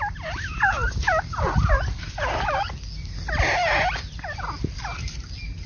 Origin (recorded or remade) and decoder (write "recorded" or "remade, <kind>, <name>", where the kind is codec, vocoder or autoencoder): recorded